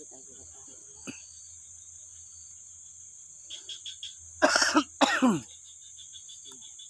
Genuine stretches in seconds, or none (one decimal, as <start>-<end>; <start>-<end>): 0.0-0.8; 1.4-6.9